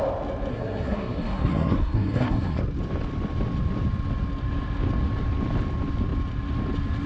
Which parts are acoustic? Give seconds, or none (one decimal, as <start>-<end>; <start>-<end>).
0.0-0.5; 2.6-7.1